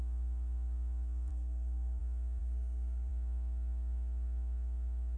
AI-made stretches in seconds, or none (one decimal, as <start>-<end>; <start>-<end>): 1.3-2.0; 2.4-3.1